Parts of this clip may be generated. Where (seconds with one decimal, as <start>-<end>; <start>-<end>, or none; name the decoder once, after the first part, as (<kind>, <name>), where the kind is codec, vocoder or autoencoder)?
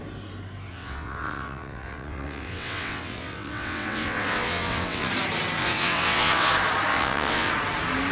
0.7-5.1 (vocoder, WaveNeXt); 5.6-6.5; 6.9-7.5